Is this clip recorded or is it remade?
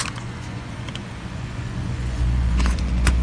remade